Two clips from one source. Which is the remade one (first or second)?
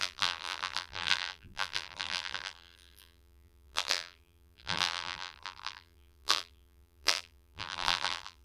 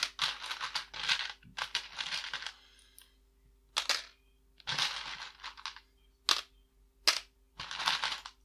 first